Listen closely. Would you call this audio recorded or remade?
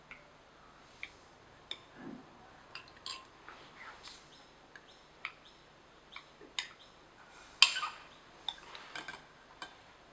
recorded